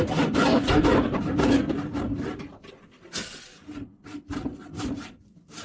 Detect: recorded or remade recorded